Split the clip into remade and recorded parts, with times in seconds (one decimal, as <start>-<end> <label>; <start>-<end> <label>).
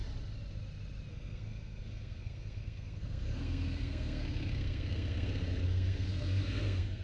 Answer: 0.0-1.1 recorded; 1.1-7.0 remade